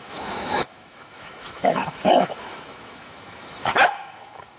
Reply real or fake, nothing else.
fake